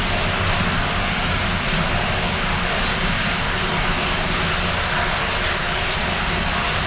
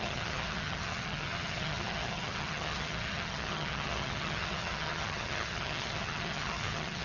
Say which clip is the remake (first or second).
second